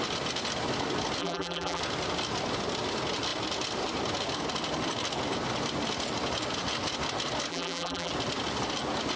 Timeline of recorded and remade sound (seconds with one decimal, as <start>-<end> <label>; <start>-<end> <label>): 0.0-1.2 recorded; 1.2-1.8 remade; 1.8-7.5 recorded; 7.5-8.1 remade; 8.1-9.2 recorded